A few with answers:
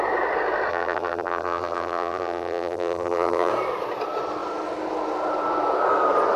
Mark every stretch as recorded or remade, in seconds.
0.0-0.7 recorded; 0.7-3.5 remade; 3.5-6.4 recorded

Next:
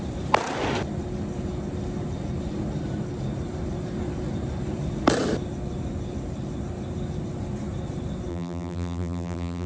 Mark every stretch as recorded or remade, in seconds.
0.0-8.3 recorded; 8.3-9.7 remade

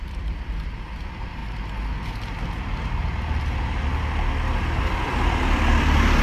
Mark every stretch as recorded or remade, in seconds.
0.0-1.4 remade; 1.4-4.8 recorded; 4.8-6.2 remade